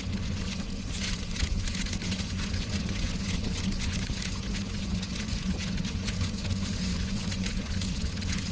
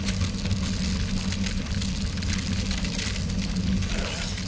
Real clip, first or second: second